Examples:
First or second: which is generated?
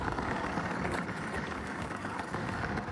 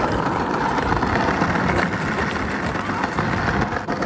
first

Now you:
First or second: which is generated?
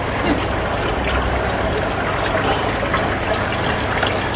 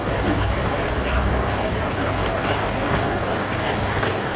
second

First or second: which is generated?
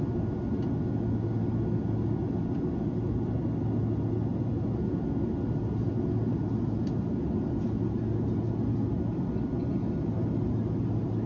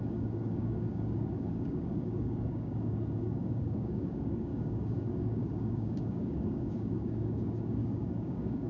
second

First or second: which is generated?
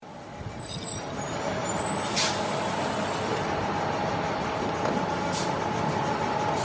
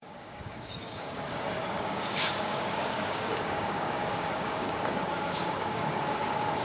second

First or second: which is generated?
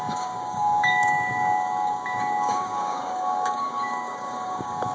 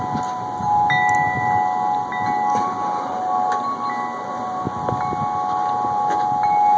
first